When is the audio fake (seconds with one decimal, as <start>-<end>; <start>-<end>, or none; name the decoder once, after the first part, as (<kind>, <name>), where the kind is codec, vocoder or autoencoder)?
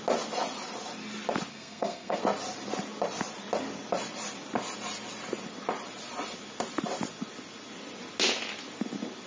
1.5-2.2 (codec, SNAC)